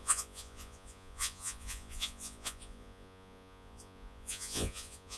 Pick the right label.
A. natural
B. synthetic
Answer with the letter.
B